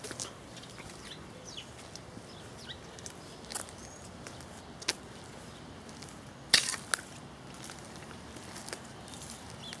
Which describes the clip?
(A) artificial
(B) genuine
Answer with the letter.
B